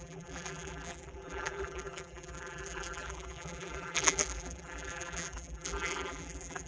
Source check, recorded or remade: remade